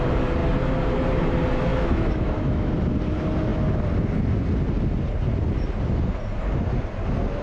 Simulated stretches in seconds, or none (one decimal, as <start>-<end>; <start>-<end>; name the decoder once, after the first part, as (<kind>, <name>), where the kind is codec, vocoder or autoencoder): 1.7-2.7 (autoencoder, DAC-VAE)